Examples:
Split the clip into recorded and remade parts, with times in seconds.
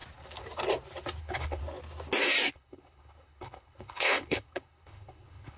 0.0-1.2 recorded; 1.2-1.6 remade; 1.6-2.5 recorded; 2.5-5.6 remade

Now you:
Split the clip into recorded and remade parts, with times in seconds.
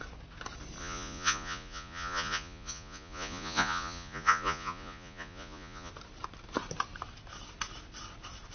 0.0-0.8 recorded; 0.8-5.9 remade; 5.9-8.5 recorded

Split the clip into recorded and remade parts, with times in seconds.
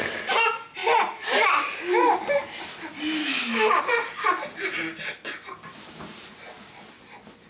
0.0-3.2 recorded; 3.2-3.8 remade; 3.8-7.5 recorded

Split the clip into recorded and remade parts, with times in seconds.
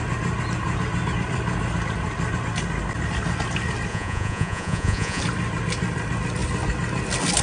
0.0-3.9 recorded; 3.9-5.2 remade; 5.2-7.4 recorded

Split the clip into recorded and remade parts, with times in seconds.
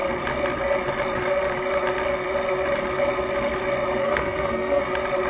0.0-4.0 recorded; 4.0-4.8 remade; 4.8-5.3 recorded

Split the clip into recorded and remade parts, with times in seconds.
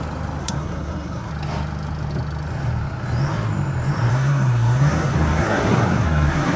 0.0-0.4 recorded; 0.4-1.3 remade; 1.3-4.1 recorded; 4.1-6.6 remade